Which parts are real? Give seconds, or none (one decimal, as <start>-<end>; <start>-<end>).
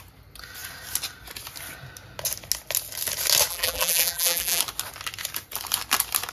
0.0-3.5; 4.6-6.3